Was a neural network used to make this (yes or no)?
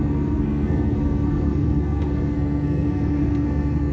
yes